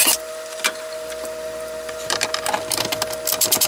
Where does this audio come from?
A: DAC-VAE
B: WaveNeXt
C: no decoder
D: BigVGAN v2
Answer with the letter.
D